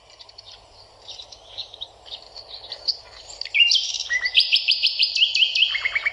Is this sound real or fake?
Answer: fake